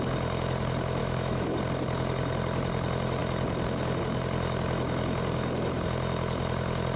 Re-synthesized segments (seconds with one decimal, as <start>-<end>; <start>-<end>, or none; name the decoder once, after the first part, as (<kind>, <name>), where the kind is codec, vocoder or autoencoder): 1.0-1.6 (autoencoder, DAC-VAE)